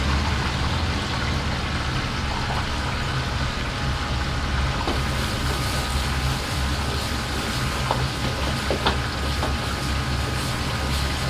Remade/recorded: recorded